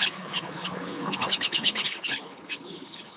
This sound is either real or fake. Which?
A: fake